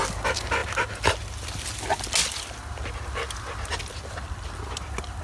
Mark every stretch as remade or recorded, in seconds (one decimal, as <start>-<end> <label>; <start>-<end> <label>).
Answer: 0.0-5.2 recorded